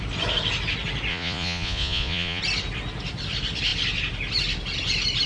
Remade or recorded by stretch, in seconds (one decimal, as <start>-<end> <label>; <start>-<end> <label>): 0.0-1.1 recorded; 1.1-2.4 remade; 2.4-5.3 recorded